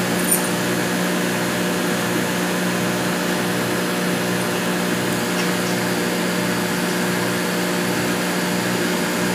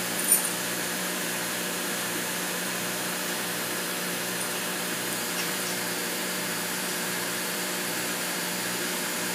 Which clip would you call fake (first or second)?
second